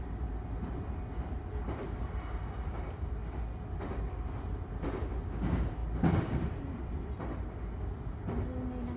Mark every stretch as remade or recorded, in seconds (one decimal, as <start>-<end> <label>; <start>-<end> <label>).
0.0-9.0 recorded